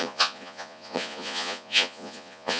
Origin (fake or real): fake